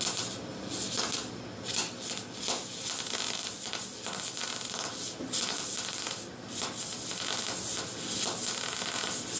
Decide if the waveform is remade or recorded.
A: recorded